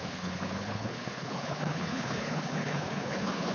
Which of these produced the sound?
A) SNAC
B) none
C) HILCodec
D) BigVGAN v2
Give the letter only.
C